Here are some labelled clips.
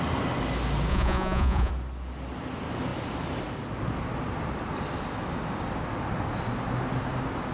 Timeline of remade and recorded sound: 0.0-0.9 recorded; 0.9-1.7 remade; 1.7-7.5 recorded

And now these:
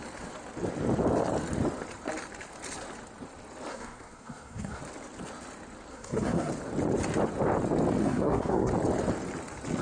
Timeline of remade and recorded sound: 0.0-3.7 recorded; 3.7-4.8 remade; 4.8-5.9 recorded; 5.9-6.5 remade; 6.5-8.0 recorded; 8.0-8.7 remade; 8.7-9.8 recorded

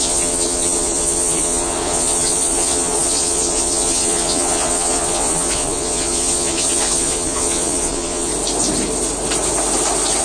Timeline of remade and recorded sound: 0.0-8.3 remade; 8.3-10.2 recorded

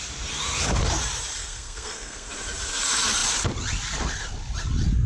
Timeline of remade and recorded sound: 0.0-1.4 recorded; 1.4-2.3 remade; 2.3-5.1 recorded

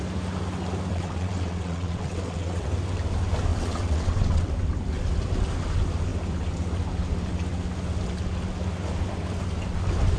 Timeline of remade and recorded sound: 0.0-0.9 recorded; 0.9-2.7 remade; 2.7-3.5 recorded; 3.5-4.5 remade; 4.5-10.2 recorded